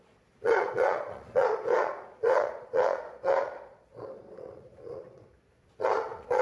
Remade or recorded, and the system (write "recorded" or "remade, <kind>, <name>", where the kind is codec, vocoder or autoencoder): remade, vocoder, Vocos